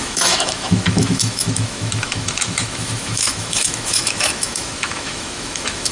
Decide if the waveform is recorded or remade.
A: remade